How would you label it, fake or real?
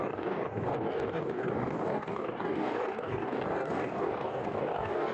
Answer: fake